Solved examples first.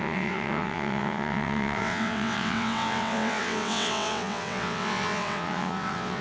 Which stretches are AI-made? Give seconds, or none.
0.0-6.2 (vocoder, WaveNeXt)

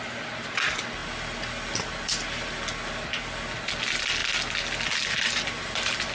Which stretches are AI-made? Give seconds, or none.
none

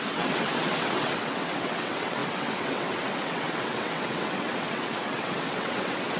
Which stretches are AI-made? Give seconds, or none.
0.0-6.2 (vocoder, WaveNeXt)

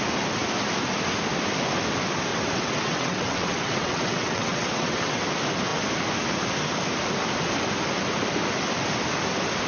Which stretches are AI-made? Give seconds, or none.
2.3-5.2 (vocoder, WaveNeXt)

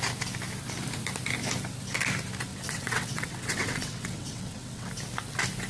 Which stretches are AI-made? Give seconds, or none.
2.5-4.9 (vocoder, WaveNeXt)

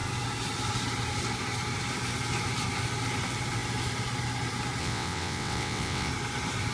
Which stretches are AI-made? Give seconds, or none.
4.8-6.1 (vocoder, WaveNeXt)

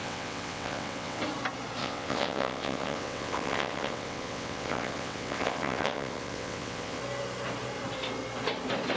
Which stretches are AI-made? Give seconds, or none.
0.0-1.2 (vocoder, WaveNeXt); 1.8-7.0